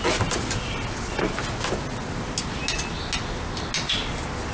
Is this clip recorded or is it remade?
recorded